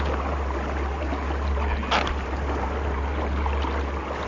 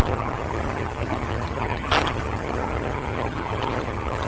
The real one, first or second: first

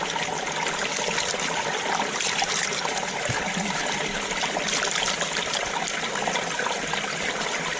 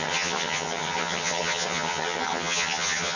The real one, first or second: first